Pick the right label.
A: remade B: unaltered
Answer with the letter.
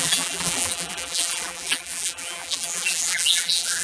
A